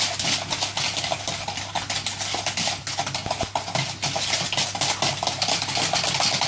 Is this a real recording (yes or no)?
yes